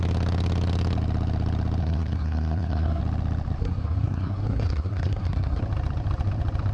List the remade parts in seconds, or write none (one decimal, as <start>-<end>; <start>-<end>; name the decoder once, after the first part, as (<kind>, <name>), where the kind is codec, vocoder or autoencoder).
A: 1.8-3.0 (codec, SNAC); 3.6-5.6